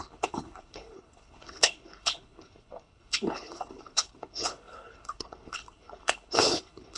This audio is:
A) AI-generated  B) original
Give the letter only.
A